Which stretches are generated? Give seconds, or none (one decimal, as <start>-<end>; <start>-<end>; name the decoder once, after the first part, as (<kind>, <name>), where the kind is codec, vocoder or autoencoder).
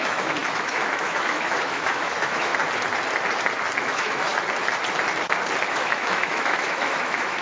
0.0-2.5 (autoencoder, DAC-VAE); 3.8-4.3; 5.7-7.4